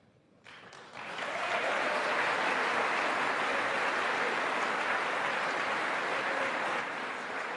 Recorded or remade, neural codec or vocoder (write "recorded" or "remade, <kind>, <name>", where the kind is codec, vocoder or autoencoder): recorded